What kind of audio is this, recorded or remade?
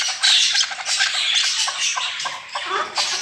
recorded